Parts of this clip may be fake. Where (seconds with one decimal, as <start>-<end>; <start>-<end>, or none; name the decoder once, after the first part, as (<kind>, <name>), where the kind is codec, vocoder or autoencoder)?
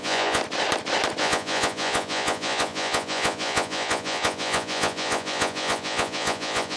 0.0-0.4 (vocoder, Vocos); 1.2-6.8